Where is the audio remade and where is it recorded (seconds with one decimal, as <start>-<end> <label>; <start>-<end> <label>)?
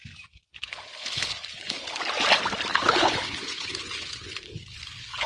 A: 0.0-0.5 recorded; 0.5-2.1 remade; 2.1-2.7 recorded; 2.7-5.3 remade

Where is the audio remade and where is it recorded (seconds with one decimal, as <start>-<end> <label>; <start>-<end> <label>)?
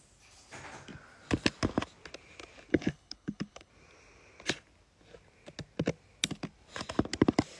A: 0.0-2.7 recorded; 2.7-3.7 remade; 3.7-7.6 recorded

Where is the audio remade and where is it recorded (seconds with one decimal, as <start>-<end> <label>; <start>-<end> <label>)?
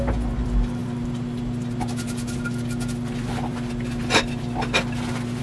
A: 0.0-5.4 recorded